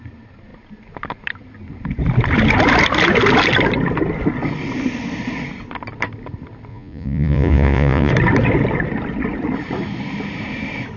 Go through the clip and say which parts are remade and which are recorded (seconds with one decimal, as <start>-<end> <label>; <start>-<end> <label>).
0.0-6.7 recorded; 6.7-8.1 remade; 8.1-11.0 recorded